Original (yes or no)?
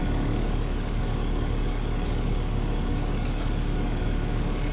no